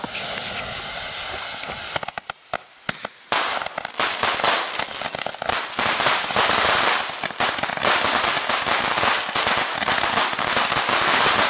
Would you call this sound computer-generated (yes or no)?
no